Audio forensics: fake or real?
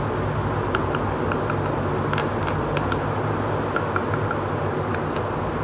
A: real